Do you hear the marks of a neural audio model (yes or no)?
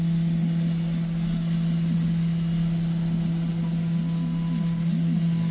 no